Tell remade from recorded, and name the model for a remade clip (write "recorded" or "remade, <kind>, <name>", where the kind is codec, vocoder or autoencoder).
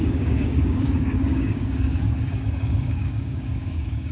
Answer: remade, codec, DAC